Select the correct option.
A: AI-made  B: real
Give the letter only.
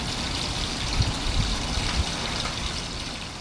B